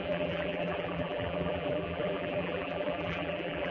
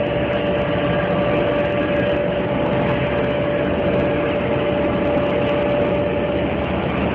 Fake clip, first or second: first